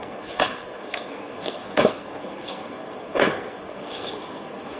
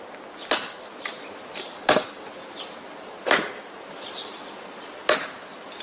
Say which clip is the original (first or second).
second